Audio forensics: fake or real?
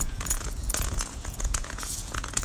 fake